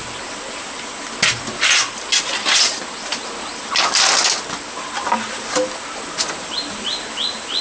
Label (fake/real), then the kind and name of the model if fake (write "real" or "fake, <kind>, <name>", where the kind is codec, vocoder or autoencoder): real